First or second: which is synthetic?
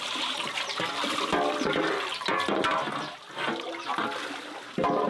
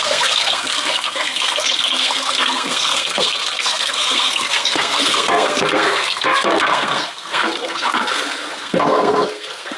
second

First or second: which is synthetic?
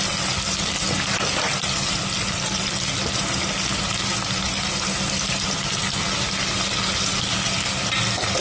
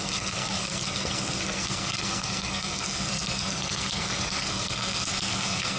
second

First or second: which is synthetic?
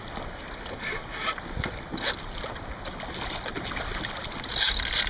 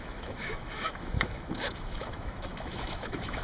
second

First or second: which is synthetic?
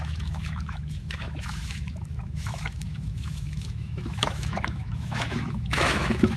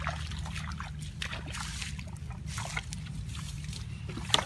first